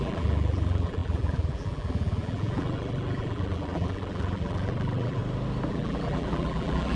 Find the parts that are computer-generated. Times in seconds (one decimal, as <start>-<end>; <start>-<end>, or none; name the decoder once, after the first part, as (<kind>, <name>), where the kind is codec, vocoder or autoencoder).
0.0-5.2 (vocoder, BigVGAN v2); 5.7-7.0